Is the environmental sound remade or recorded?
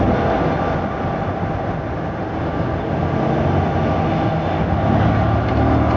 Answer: recorded